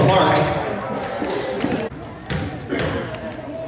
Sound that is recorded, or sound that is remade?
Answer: recorded